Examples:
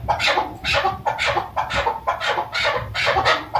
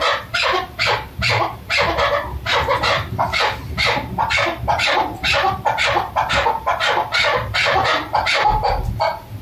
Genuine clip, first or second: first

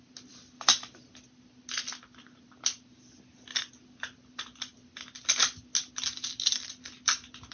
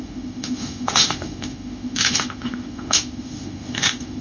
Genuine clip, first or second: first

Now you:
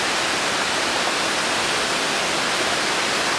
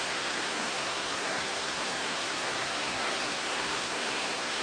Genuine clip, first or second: first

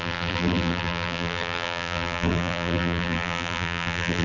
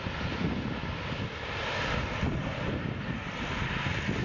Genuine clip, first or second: second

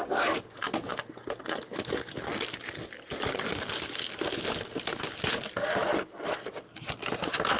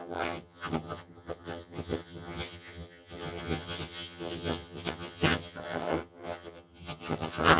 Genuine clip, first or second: first